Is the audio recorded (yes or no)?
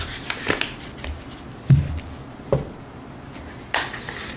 yes